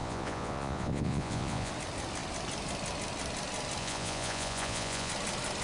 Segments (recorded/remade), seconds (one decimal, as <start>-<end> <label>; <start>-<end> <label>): 0.0-1.7 remade; 1.7-3.8 recorded; 3.8-5.1 remade; 5.1-5.6 recorded